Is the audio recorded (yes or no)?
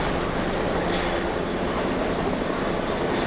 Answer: yes